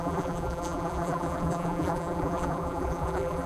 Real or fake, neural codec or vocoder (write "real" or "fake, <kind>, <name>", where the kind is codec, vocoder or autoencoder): fake, vocoder, BigVGAN v2